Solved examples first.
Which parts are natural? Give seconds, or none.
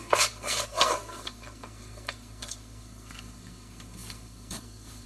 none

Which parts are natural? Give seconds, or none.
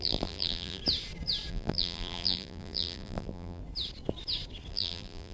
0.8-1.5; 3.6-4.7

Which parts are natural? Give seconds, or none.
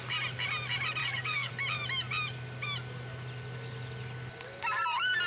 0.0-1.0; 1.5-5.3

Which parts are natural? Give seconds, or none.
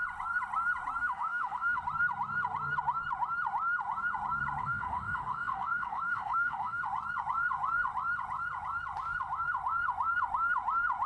0.0-1.0; 1.8-4.6; 6.8-11.1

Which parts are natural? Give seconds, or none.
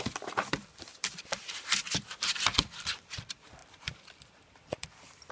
none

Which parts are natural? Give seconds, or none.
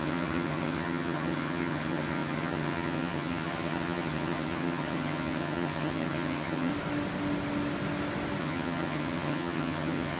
6.7-8.4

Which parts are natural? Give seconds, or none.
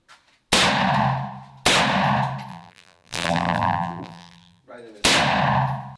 0.0-2.5; 4.6-6.0